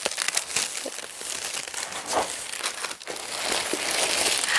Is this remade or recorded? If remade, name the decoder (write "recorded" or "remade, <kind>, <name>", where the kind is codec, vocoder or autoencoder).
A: recorded